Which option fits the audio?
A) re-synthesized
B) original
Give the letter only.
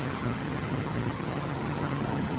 A